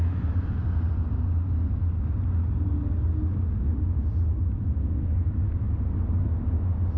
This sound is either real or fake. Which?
real